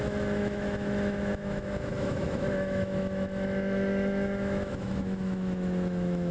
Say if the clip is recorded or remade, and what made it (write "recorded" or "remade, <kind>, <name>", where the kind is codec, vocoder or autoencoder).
remade, autoencoder, DAC-VAE